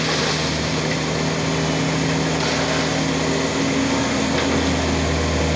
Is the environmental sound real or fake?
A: real